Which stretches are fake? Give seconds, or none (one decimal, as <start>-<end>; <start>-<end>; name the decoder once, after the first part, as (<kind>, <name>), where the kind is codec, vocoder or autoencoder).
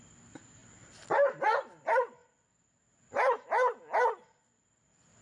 0.6-1.4 (vocoder, BigVGAN v2)